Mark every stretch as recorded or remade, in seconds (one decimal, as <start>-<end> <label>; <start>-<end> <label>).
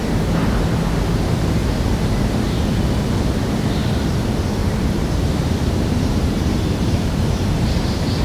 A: 0.0-1.6 recorded; 1.6-2.6 remade; 2.6-4.6 recorded; 4.6-8.2 remade